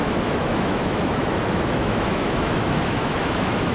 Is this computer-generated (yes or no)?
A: yes